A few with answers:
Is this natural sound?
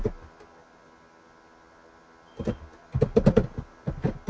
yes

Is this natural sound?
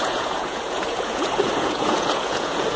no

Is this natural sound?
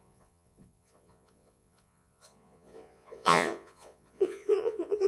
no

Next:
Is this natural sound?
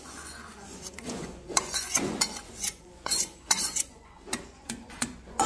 no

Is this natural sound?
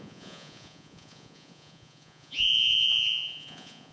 no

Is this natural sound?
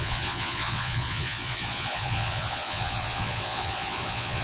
no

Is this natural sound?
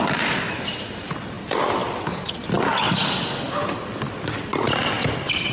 yes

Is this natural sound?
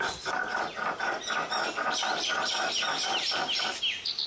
yes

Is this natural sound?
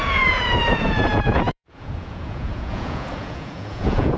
no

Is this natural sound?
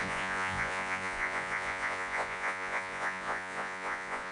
no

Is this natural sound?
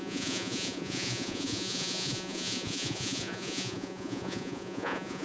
no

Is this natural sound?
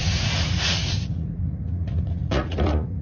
no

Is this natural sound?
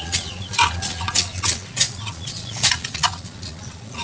no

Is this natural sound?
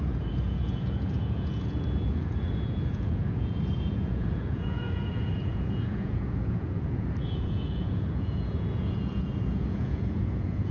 no